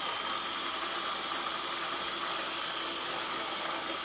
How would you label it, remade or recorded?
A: recorded